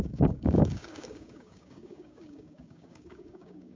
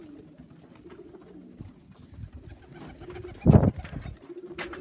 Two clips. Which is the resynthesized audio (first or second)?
first